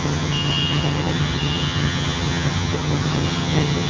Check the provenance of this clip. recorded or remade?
remade